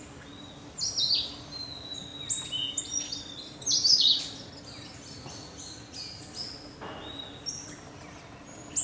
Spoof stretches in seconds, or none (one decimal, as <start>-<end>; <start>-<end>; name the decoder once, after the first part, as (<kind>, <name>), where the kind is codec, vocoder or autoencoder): 3.9-4.5 (vocoder, Vocos); 5.4-6.2